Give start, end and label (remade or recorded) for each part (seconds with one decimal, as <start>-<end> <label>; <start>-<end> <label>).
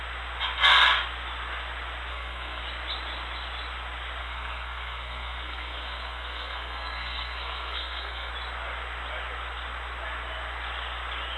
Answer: 0.0-2.1 recorded; 2.1-2.6 remade; 2.6-4.2 recorded; 4.2-8.3 remade; 8.3-11.4 recorded